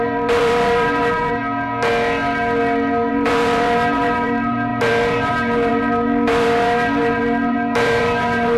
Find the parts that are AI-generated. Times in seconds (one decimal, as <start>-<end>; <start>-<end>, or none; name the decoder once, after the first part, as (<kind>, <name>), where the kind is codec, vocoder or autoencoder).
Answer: 0.0-1.4 (vocoder, BigVGAN v2); 3.1-8.6